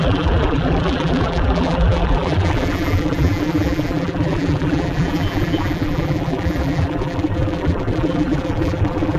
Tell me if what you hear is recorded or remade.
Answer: remade